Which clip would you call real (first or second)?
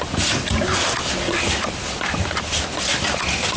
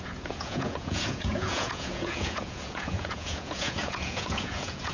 first